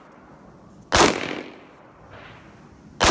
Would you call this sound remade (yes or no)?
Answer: no